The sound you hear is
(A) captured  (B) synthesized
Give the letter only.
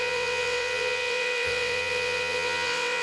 B